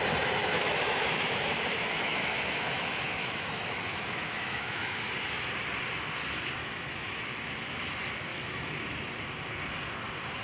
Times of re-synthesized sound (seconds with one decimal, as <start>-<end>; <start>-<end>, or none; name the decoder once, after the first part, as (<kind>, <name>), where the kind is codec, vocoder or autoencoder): 0.4-5.1 (autoencoder, DAC-VAE); 6.6-7.2; 8.3-8.8